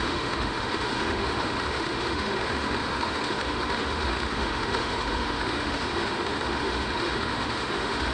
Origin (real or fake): fake